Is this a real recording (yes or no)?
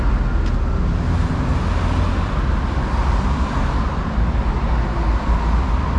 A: yes